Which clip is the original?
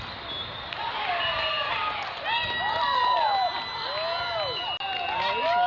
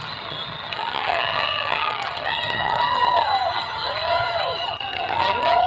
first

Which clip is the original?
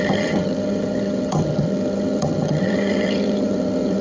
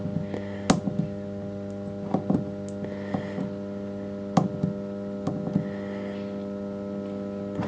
second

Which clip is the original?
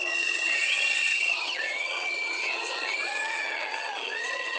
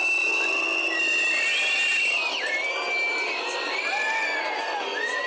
second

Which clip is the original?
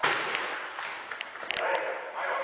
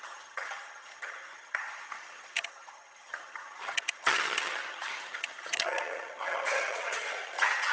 first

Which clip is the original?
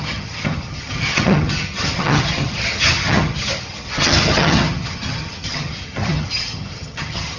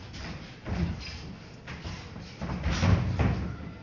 second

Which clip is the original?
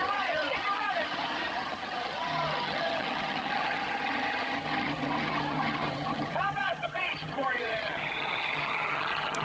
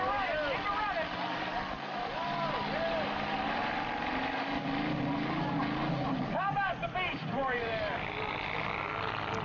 second